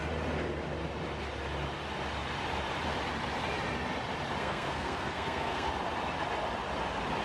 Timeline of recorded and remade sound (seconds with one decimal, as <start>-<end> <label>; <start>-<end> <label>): 0.0-4.4 recorded; 4.4-5.7 remade; 5.7-7.2 recorded